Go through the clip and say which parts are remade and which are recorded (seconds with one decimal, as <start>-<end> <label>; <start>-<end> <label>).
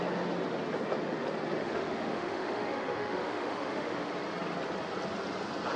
0.0-1.6 recorded; 1.6-4.1 remade; 4.1-5.8 recorded